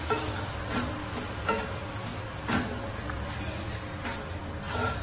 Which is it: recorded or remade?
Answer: recorded